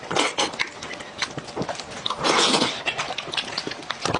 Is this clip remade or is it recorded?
recorded